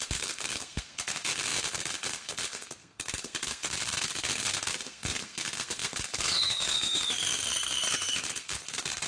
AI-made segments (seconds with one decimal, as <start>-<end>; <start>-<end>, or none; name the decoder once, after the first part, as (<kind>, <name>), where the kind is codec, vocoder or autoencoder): 0.0-9.1 (codec, SNAC)